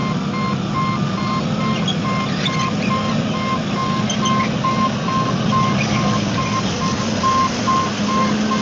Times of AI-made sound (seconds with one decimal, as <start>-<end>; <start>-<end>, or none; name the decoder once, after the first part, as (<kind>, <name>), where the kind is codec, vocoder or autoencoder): none